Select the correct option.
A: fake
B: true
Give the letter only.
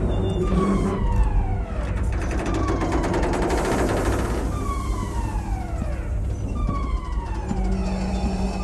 B